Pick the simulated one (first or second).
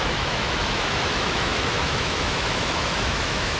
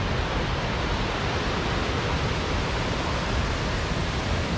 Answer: first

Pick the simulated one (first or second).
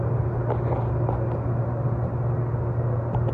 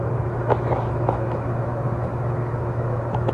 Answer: second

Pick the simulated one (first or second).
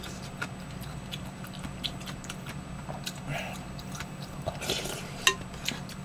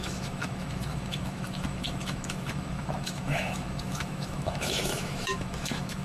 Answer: second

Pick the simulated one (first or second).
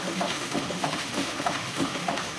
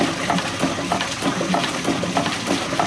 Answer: first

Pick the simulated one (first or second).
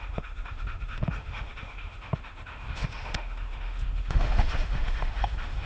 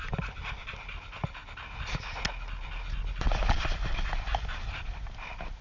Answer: first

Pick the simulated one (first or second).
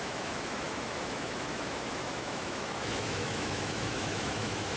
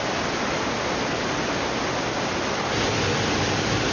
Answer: first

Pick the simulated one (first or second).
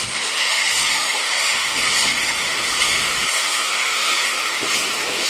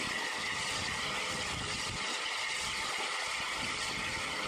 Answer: first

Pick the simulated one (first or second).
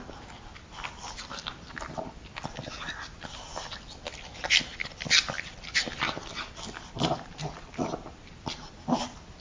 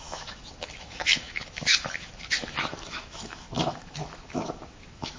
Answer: second